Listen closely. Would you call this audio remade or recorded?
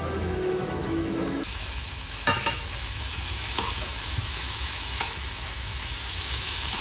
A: remade